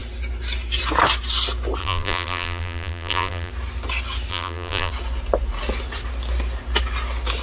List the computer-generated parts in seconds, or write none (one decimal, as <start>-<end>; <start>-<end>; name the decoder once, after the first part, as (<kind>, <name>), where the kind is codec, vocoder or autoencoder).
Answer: 1.8-3.5 (vocoder, BigVGAN v2); 4.3-4.9